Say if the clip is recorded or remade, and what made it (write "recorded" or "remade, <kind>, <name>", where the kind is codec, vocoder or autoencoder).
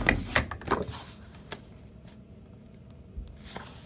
recorded